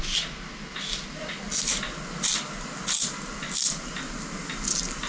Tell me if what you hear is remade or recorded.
recorded